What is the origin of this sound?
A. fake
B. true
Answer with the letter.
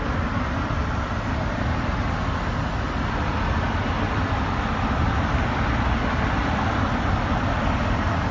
B